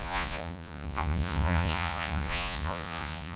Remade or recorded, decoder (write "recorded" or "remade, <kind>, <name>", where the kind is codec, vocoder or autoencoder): remade, vocoder, Vocos